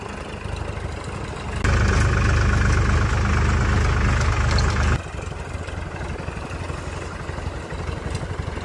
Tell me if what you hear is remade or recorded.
recorded